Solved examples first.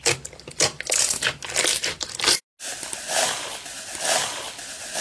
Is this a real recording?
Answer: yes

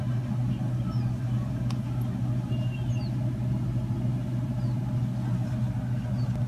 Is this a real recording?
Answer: yes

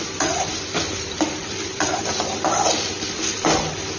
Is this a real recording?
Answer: no